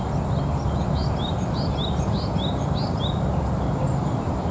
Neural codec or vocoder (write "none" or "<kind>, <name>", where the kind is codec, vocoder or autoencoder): none